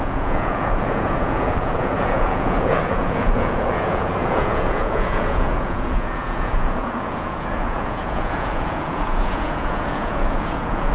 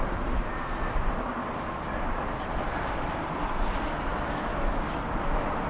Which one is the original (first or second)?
second